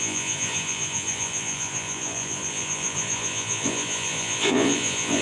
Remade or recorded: remade